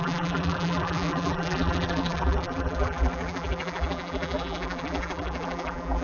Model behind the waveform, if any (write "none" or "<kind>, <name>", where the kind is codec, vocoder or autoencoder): vocoder, BigVGAN v2